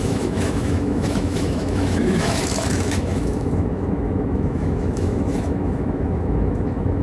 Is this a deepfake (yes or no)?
yes